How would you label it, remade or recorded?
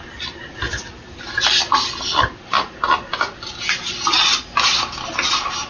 recorded